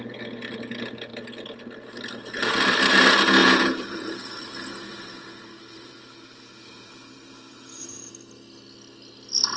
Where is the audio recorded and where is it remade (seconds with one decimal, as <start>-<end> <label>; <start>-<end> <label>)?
0.0-3.4 recorded; 3.4-8.1 remade; 8.1-9.6 recorded